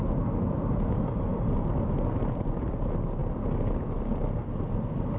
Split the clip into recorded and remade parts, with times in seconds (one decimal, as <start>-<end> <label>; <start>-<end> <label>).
0.0-5.2 recorded